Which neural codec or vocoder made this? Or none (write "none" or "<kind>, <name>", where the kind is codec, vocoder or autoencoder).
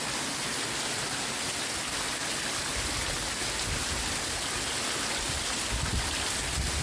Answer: none